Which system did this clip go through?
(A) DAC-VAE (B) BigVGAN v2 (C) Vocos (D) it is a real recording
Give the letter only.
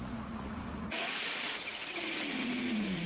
C